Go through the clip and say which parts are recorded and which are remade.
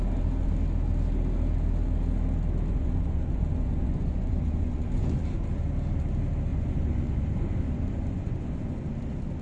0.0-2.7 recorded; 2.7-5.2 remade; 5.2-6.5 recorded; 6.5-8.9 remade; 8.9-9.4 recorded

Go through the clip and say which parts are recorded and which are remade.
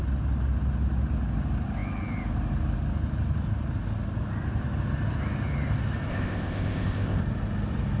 0.0-6.1 recorded; 6.1-7.2 remade; 7.2-8.0 recorded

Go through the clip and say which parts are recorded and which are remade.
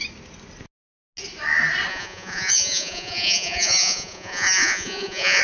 0.0-1.9 recorded; 1.9-5.4 remade